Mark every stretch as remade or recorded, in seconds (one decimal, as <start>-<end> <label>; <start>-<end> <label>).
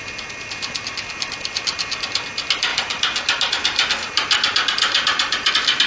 0.0-2.7 recorded; 2.7-5.5 remade; 5.5-5.9 recorded